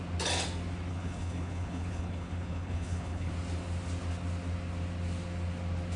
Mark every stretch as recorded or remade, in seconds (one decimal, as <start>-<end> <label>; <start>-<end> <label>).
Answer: 0.0-0.9 recorded; 0.9-3.3 remade; 3.3-6.0 recorded